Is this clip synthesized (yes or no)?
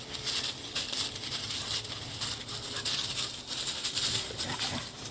no